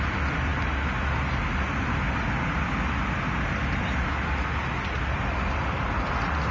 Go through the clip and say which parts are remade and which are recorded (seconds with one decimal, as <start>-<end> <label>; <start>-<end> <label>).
0.0-6.5 recorded